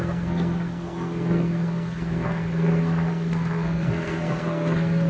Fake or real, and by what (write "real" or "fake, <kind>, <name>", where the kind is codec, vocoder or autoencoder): fake, codec, SNAC